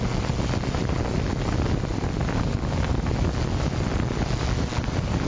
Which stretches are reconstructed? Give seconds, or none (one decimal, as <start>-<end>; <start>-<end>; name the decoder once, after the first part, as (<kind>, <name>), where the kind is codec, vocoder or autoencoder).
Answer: none

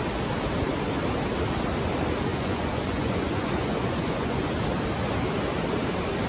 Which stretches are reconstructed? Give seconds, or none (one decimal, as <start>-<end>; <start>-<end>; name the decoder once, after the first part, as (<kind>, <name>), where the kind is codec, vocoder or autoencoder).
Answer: 2.3-4.5 (vocoder, Vocos)

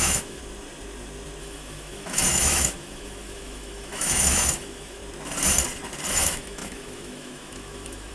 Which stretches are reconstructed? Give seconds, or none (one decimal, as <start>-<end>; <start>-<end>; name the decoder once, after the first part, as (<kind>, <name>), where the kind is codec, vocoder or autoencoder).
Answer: 0.0-0.4 (autoencoder, DAC-VAE); 1.4-5.0; 6.1-8.1

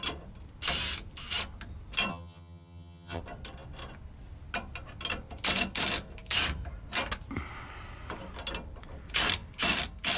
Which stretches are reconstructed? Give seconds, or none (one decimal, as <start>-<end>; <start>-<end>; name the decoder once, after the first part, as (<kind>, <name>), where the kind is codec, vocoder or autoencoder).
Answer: 2.1-3.2 (vocoder, HiFi-GAN)

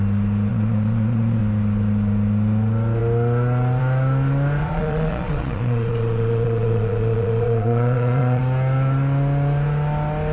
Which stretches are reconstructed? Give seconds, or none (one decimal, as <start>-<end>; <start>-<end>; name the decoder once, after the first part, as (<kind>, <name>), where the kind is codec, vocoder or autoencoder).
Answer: 0.5-1.4 (vocoder, Vocos); 4.6-8.4

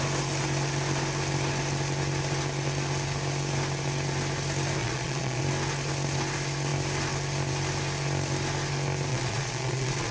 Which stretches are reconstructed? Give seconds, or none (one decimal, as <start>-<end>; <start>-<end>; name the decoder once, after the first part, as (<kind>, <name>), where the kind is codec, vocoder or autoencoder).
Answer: 4.8-5.4 (vocoder, Vocos); 9.1-10.1

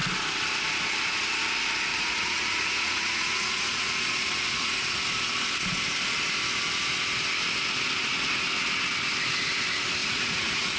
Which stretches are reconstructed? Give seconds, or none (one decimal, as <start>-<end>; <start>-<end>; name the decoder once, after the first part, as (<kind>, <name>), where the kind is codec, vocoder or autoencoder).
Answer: 1.9-4.8 (vocoder, Vocos); 10.0-10.8